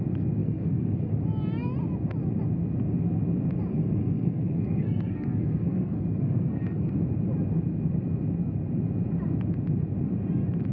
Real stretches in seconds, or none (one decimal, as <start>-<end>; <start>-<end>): 0.0-0.4; 1.1-3.7; 7.0-10.7